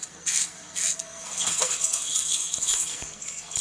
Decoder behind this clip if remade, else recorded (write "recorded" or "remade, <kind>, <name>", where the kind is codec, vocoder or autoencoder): remade, codec, SNAC